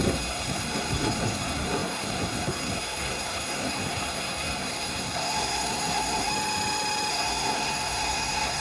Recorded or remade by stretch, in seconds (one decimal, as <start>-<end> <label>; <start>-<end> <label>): 0.0-6.3 remade; 6.3-7.1 recorded; 7.1-8.6 remade